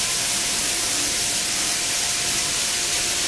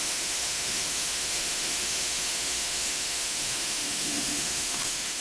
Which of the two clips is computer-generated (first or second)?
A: second